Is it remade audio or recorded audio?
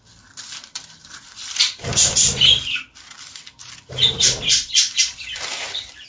remade